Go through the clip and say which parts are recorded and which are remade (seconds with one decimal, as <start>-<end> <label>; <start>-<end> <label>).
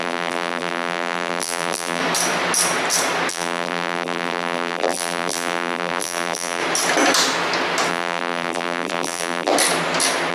0.0-2.0 remade; 2.0-3.3 recorded; 3.3-6.6 remade; 6.6-7.9 recorded; 7.9-9.5 remade; 9.5-10.3 recorded